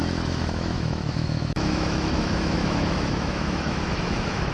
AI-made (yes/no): yes